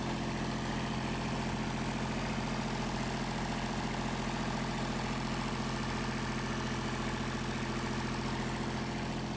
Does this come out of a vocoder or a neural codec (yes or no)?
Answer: no